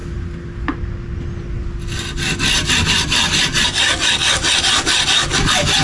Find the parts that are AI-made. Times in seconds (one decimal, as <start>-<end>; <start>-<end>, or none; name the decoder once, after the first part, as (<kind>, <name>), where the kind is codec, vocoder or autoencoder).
none